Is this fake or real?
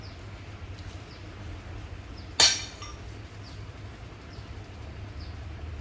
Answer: real